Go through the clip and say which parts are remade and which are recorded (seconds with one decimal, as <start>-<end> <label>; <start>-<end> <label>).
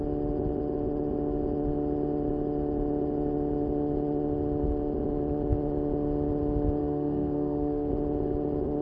0.0-6.8 recorded; 6.8-7.9 remade; 7.9-8.8 recorded